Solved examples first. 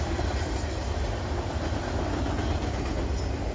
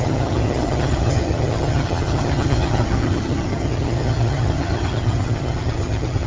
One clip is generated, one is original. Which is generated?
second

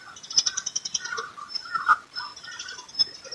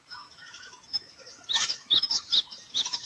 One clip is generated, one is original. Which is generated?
second